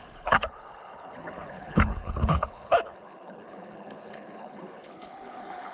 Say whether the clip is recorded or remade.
remade